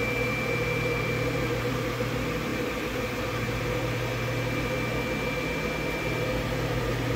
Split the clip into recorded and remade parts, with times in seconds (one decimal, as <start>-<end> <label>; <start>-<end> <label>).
0.0-7.2 recorded